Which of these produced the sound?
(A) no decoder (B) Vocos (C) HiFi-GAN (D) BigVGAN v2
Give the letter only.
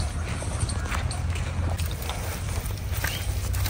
A